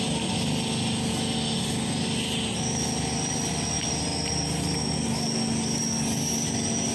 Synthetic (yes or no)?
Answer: no